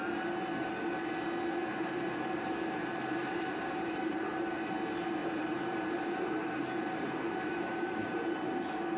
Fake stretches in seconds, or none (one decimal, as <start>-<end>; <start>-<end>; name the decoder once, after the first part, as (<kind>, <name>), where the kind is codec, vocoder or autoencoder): 1.6-4.7 (vocoder, BigVGAN v2); 5.2-9.0